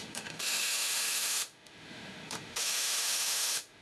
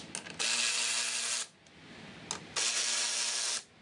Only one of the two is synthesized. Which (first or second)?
first